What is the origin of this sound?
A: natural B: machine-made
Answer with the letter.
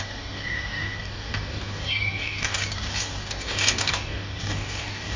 B